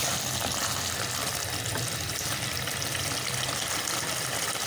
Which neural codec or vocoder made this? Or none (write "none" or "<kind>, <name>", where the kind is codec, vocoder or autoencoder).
none